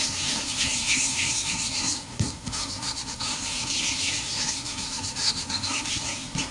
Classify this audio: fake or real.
fake